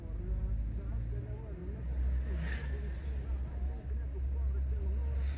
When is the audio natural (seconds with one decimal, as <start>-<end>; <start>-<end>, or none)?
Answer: 0.0-5.4